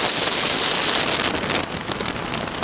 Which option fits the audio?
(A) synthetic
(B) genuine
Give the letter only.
B